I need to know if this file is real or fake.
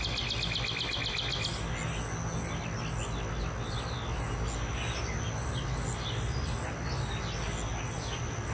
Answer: real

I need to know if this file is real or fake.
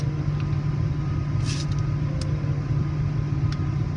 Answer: real